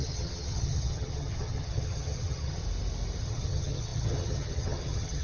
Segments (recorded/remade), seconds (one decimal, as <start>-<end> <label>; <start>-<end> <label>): 0.0-2.6 remade; 2.6-3.2 recorded; 3.2-5.2 remade